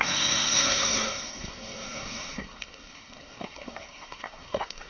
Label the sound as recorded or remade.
remade